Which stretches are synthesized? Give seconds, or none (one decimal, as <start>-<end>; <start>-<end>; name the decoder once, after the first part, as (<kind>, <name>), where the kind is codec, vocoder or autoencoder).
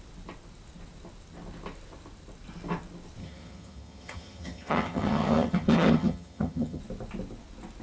3.2-6.8 (vocoder, HiFi-GAN)